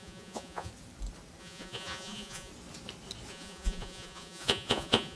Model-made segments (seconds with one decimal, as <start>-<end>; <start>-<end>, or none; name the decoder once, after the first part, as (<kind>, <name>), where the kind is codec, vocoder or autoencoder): 0.0-0.7 (vocoder, Vocos); 1.4-2.5; 3.3-5.2